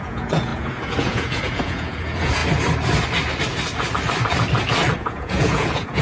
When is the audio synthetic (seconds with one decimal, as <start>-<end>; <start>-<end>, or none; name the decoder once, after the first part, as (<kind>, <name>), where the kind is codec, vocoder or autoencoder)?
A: 0.0-2.4 (vocoder, Vocos); 5.0-6.0

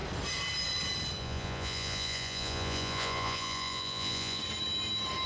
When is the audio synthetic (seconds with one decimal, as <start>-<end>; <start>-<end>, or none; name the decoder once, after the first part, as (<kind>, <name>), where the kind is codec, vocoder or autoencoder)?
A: 1.2-4.4 (vocoder, Vocos)

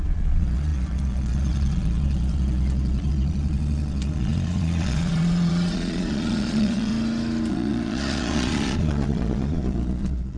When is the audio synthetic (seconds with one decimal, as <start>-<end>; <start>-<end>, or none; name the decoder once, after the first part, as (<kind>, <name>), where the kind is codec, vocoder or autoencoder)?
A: 0.0-6.9 (vocoder, Vocos); 7.5-10.4